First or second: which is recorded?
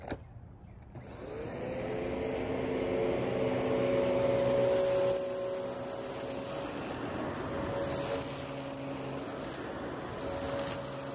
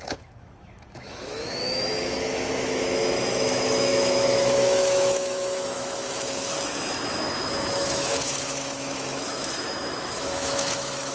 first